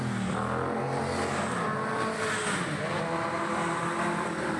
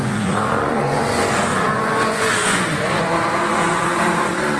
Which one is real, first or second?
first